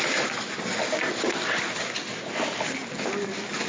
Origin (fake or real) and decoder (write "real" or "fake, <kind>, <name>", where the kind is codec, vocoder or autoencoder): real